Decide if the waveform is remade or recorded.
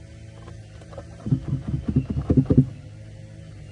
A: recorded